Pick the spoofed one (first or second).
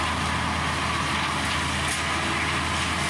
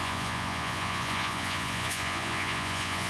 second